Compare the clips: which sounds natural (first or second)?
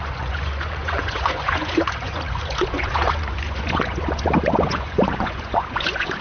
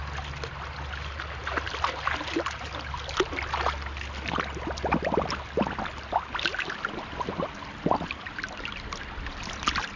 second